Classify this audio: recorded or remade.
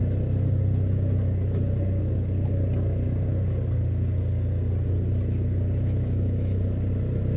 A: recorded